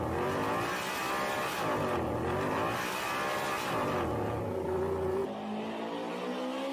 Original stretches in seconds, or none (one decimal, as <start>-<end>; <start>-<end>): 0.0-6.7